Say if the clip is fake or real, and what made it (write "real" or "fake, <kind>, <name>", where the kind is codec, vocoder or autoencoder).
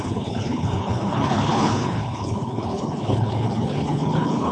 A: fake, codec, HILCodec